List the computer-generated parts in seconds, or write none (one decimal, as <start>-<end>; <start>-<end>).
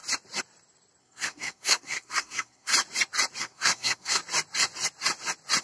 1.0-2.7; 3.4-4.2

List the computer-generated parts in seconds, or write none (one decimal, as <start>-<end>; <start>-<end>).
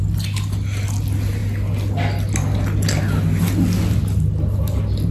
none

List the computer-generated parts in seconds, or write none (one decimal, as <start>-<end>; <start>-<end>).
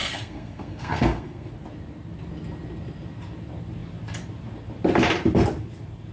0.0-1.5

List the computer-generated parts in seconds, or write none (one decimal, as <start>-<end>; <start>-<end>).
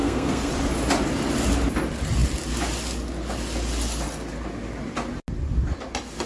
0.0-0.5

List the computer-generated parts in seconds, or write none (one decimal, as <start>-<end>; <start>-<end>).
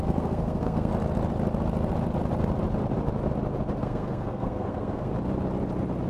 0.0-0.9; 3.8-5.1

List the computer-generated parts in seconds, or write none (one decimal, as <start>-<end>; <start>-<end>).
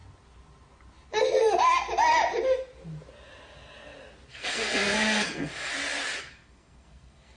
4.3-5.7; 6.2-7.4